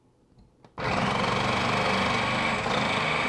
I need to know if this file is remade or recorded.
recorded